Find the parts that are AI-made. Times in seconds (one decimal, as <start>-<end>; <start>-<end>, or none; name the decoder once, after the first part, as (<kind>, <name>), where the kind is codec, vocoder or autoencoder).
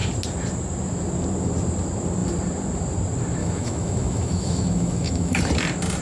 3.4-5.4 (autoencoder, DAC-VAE)